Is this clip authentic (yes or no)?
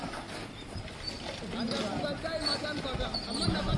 yes